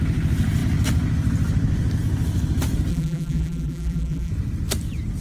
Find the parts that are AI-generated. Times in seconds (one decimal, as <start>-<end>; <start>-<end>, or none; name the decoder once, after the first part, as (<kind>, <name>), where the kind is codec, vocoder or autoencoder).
2.9-4.3 (vocoder, BigVGAN v2)